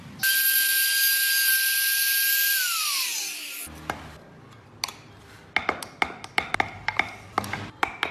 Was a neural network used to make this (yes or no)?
no